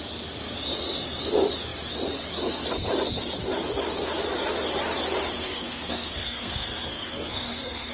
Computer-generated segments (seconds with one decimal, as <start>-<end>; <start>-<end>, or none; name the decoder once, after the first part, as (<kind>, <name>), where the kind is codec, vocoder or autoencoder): 5.4-7.9 (codec, SNAC)